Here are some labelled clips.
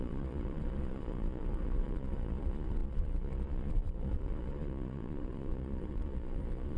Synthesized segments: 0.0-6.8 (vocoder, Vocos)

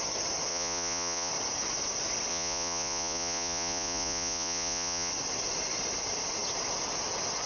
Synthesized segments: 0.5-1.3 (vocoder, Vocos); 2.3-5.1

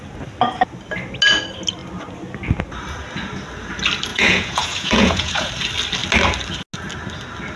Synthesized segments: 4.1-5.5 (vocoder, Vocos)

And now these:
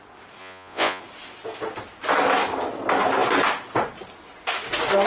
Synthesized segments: 0.4-1.0 (vocoder, Vocos)

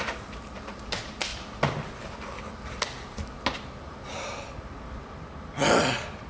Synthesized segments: none

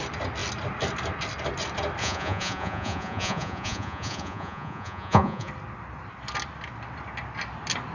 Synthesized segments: 2.0-5.5 (vocoder, Vocos)